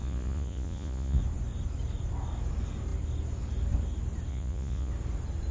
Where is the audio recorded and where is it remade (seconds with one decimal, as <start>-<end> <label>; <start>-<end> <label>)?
0.0-1.2 remade; 1.2-4.3 recorded; 4.3-4.9 remade; 4.9-5.5 recorded

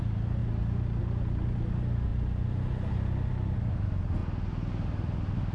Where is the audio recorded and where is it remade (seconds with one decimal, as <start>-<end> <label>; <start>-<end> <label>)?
0.0-5.5 recorded

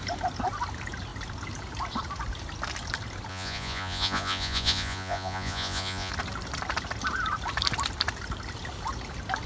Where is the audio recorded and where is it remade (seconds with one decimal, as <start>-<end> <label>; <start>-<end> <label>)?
0.0-3.3 recorded; 3.3-6.1 remade; 6.1-9.5 recorded

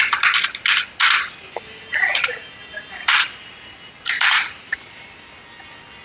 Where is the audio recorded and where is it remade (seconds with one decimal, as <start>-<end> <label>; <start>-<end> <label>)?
0.0-1.9 recorded; 1.9-5.3 remade; 5.3-6.0 recorded

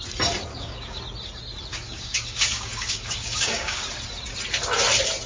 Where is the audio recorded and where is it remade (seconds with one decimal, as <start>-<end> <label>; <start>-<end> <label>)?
0.0-0.5 recorded; 0.5-1.0 remade; 1.0-1.7 recorded; 1.7-3.8 remade; 3.8-5.3 recorded

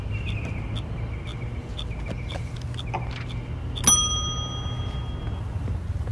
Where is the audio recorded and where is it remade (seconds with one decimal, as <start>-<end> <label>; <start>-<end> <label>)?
0.0-6.1 recorded

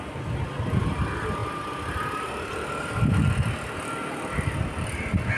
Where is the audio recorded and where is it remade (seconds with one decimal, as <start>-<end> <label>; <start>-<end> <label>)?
0.0-1.4 recorded; 1.4-3.8 remade; 3.8-5.4 recorded